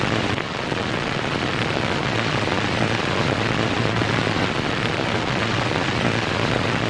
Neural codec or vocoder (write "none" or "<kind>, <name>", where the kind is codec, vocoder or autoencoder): vocoder, Vocos